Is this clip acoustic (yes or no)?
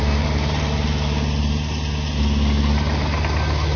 yes